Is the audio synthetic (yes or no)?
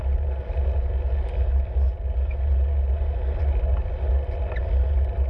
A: no